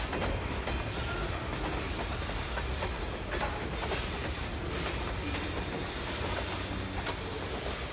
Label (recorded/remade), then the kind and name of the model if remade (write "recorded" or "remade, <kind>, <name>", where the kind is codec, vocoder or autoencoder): recorded